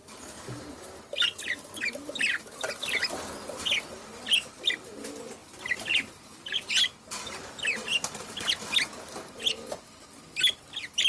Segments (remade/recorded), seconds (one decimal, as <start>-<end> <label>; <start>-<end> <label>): 0.0-11.1 recorded